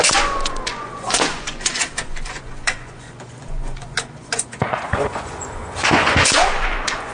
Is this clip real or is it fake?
fake